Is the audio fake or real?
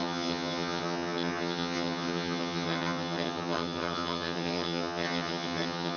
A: fake